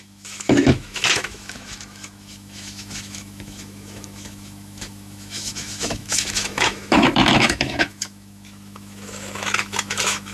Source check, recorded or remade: remade